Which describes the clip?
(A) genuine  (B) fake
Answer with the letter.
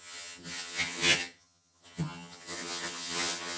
B